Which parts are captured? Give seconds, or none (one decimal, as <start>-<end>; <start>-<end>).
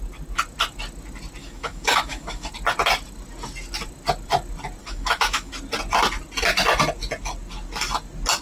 0.0-1.4; 2.5-4.8; 5.5-8.4